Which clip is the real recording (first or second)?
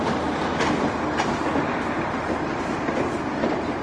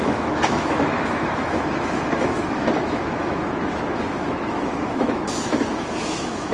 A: first